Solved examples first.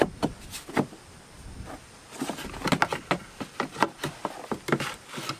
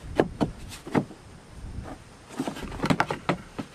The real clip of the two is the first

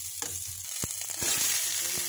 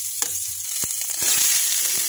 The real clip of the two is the first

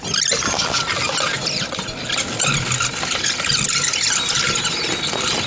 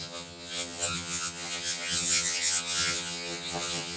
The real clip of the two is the first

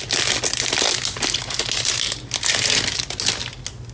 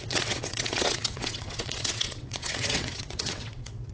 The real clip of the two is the first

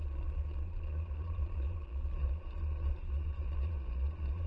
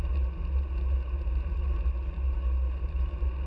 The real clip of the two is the second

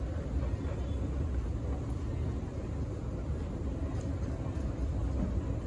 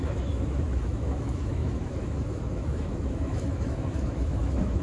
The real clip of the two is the first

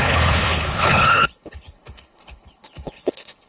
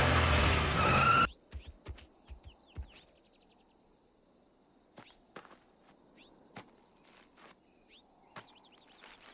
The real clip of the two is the second